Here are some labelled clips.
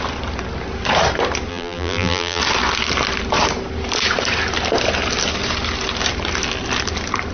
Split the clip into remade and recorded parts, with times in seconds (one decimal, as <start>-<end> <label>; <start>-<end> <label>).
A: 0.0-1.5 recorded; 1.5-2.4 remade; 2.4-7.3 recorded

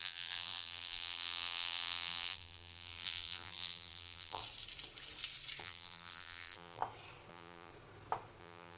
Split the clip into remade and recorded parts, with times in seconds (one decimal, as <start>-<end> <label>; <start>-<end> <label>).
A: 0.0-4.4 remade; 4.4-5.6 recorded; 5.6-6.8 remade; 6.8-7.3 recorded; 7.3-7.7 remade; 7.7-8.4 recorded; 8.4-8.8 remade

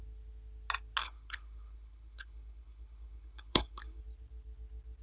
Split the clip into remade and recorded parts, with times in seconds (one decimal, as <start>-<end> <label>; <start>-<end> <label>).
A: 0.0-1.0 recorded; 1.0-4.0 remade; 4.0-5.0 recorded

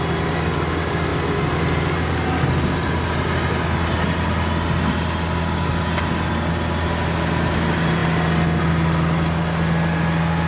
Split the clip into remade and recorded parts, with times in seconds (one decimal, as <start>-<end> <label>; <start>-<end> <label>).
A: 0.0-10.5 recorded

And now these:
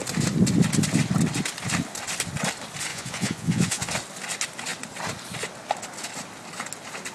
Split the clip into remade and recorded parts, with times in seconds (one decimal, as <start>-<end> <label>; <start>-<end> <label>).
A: 0.0-2.9 recorded; 2.9-3.9 remade; 3.9-7.1 recorded

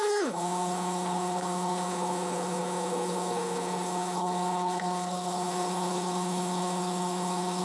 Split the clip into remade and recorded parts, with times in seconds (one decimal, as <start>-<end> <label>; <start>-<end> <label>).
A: 0.0-7.6 remade

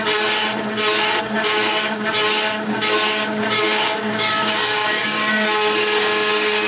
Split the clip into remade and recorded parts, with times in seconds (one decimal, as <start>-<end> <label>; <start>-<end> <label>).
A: 0.0-0.4 remade; 0.4-1.2 recorded; 1.2-6.7 remade